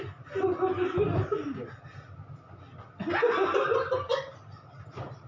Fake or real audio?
real